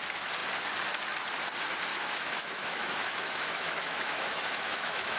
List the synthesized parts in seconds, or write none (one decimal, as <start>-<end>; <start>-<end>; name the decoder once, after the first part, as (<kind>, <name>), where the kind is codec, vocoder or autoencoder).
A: 1.9-5.2 (autoencoder, DAC-VAE)